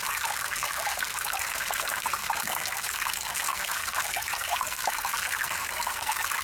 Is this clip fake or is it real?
fake